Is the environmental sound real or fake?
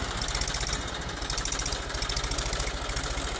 fake